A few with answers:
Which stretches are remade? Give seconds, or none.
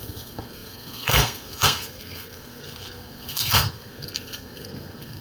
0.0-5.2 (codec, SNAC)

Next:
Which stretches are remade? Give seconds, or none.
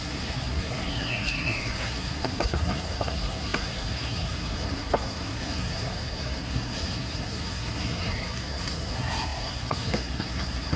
0.0-10.8 (codec, SNAC)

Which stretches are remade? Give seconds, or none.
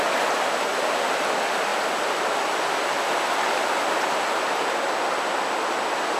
none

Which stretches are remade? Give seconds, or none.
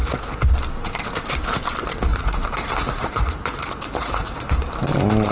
2.1-4.5 (vocoder, Vocos)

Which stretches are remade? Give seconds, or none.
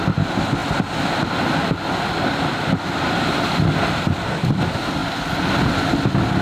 none